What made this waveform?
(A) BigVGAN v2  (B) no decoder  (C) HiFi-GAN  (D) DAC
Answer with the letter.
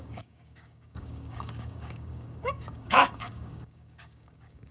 D